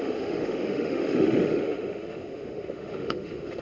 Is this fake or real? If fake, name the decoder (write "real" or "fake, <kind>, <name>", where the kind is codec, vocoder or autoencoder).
fake, autoencoder, DAC-VAE